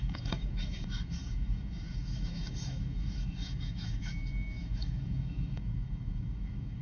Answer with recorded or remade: remade